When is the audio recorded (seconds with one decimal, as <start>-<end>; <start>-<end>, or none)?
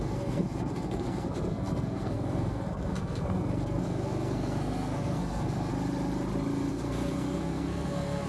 5.7-6.7